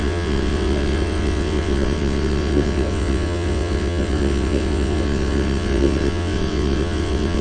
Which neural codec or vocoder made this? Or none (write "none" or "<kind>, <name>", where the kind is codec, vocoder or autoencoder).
vocoder, WaveNeXt